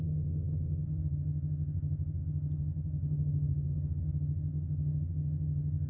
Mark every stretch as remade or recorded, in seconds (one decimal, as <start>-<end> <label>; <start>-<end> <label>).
0.0-5.9 remade